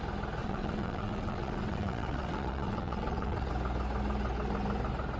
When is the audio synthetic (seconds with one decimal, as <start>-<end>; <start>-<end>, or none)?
0.4-3.5

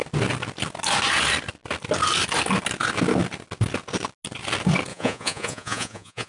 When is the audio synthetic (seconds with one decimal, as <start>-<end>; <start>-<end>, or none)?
4.9-6.3